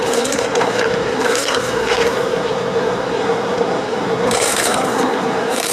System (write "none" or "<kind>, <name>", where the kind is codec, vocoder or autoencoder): codec, SNAC